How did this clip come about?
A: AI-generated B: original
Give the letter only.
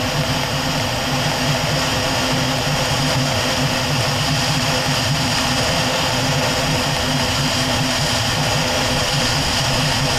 B